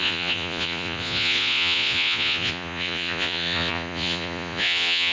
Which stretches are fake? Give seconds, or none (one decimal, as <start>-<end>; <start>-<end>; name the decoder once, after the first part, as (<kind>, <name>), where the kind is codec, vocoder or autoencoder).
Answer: 0.0-5.1 (vocoder, Vocos)